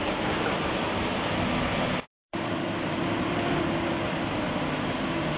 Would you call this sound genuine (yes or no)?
no